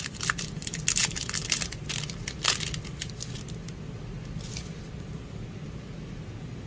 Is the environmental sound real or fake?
real